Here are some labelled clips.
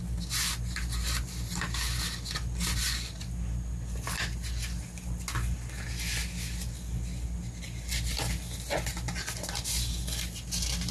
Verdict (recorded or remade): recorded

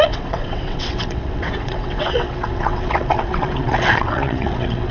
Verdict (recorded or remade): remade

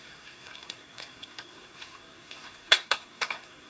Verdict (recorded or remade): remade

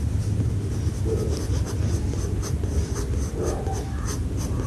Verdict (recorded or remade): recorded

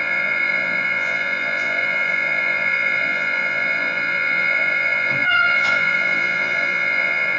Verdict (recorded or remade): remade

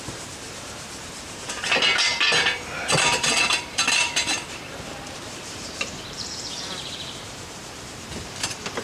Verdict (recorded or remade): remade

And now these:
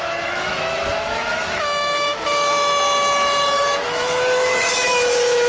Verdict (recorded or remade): remade